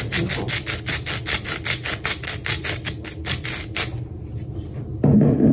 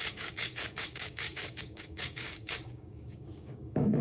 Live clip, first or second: first